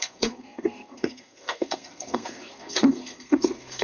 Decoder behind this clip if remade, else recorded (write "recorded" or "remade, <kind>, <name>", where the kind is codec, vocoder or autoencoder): remade, codec, SNAC